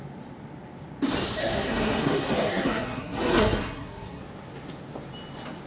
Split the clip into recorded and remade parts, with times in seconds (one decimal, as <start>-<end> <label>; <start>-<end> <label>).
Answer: 0.0-1.4 recorded; 1.4-4.2 remade; 4.2-5.7 recorded